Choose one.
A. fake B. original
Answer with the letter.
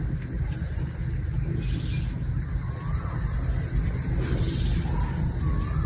B